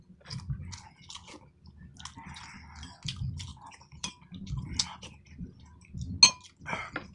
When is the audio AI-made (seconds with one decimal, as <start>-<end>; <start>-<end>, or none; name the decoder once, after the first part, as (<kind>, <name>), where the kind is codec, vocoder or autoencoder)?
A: 3.5-4.1 (vocoder, BigVGAN v2)